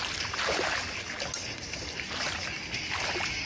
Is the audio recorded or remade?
recorded